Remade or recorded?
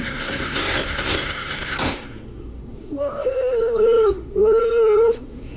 remade